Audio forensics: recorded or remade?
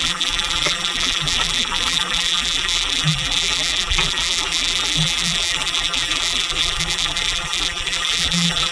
remade